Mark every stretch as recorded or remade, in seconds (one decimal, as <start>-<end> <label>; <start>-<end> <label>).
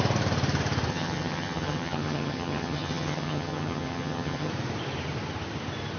0.0-0.9 recorded; 0.9-4.5 remade; 4.5-6.0 recorded